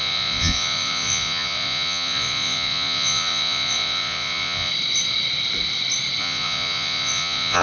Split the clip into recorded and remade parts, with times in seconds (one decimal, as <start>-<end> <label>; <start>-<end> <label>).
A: 0.0-4.7 remade; 4.7-6.2 recorded; 6.2-7.6 remade